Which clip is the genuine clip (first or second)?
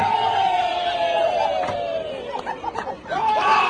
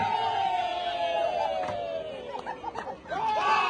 second